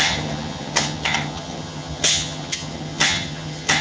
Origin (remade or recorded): remade